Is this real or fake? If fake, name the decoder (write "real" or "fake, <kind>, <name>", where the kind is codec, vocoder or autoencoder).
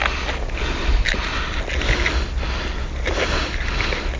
real